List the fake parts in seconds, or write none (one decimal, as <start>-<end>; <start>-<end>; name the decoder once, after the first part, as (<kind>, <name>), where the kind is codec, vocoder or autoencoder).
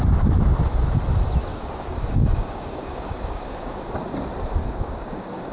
1.5-3.8 (codec, DAC); 4.6-5.5